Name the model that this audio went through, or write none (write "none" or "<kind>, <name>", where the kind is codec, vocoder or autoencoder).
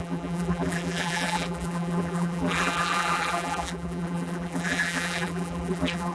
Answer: vocoder, BigVGAN v2